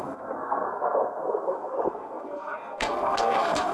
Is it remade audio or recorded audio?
remade